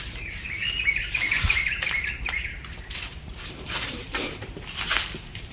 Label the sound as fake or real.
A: fake